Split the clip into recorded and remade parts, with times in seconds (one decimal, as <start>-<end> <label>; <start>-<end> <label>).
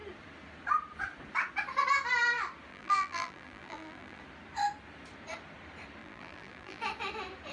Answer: 0.0-2.7 recorded; 2.7-4.2 remade; 4.2-6.0 recorded; 6.0-6.8 remade; 6.8-7.5 recorded